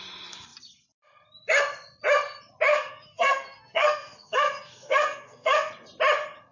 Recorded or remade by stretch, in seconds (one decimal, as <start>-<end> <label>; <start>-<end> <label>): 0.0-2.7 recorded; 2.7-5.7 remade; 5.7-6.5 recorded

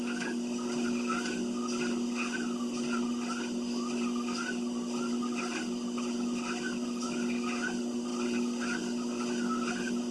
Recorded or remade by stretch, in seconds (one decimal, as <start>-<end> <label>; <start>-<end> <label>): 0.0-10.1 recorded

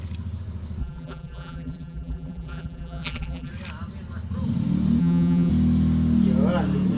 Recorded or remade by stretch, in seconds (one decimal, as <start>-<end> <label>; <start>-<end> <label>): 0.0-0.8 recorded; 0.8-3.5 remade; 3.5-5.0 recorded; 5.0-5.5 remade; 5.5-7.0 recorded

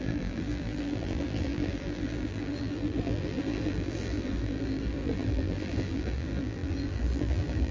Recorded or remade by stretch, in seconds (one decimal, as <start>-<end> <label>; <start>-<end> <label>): 0.0-7.7 remade